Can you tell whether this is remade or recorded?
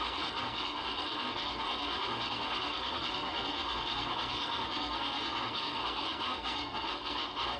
remade